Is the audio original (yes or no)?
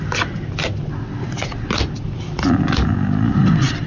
yes